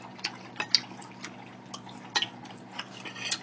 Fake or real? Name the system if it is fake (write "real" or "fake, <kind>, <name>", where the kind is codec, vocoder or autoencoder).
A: real